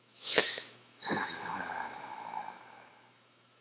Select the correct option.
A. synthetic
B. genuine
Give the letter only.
A